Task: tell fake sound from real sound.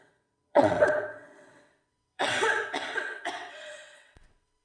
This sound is fake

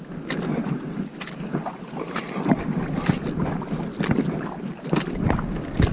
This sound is real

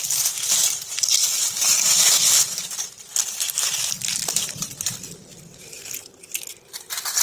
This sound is real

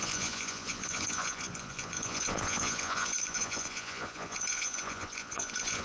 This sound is fake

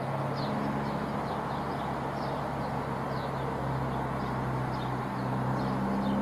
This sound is real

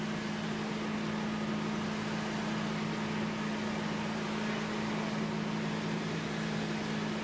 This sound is real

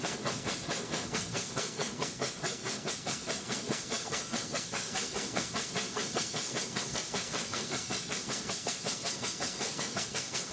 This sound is fake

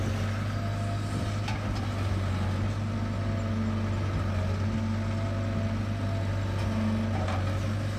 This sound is real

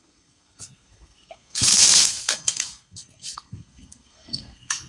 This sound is fake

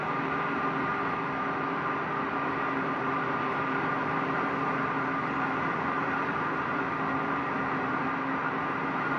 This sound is fake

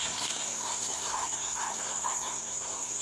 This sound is fake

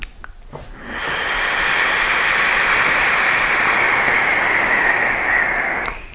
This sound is real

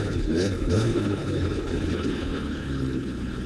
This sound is fake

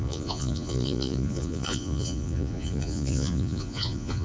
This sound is fake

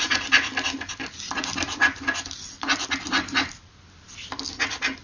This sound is real